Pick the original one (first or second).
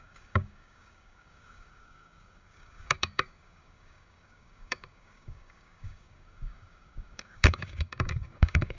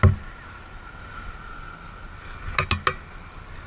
second